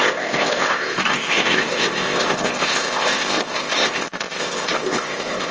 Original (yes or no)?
no